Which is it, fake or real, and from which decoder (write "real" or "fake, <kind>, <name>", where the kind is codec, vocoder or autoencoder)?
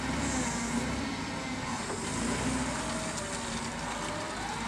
real